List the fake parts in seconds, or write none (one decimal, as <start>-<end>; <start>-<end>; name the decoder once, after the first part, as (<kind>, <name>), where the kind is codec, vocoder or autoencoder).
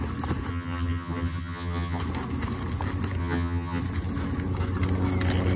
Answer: 0.5-2.0 (vocoder, HiFi-GAN); 3.2-3.8